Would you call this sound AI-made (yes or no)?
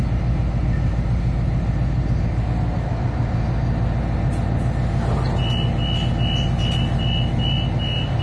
no